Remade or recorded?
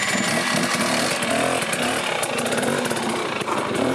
recorded